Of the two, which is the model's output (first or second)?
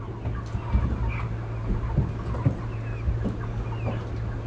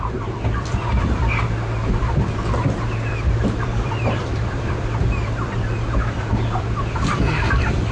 second